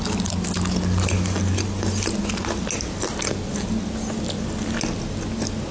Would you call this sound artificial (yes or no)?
no